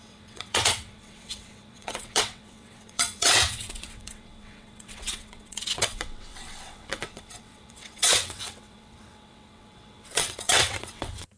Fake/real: fake